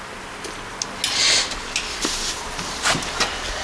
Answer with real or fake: real